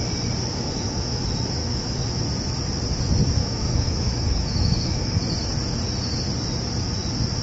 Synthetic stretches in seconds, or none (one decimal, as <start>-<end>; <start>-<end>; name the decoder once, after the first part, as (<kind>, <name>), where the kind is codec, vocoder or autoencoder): 0.5-1.2 (autoencoder, DAC-VAE); 1.6-2.2; 3.4-5.2